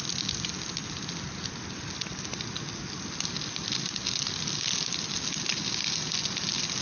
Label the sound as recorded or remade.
recorded